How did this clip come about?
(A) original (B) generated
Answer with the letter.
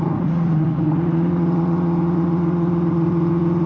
B